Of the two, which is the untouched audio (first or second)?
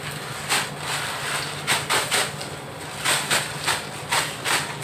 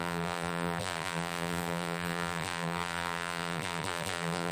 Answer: first